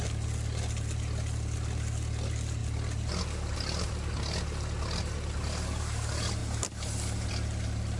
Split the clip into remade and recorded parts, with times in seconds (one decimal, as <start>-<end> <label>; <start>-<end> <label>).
0.0-8.0 recorded